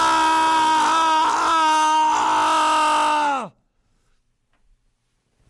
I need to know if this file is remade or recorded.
recorded